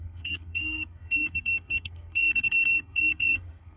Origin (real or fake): fake